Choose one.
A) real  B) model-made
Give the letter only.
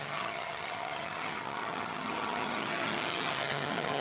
B